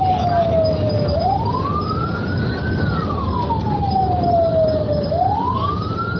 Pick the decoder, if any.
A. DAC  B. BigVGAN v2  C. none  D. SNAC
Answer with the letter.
C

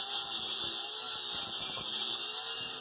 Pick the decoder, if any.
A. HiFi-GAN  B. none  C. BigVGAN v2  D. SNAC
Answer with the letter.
B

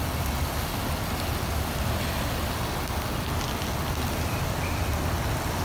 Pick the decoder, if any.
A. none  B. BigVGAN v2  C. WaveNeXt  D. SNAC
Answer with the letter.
A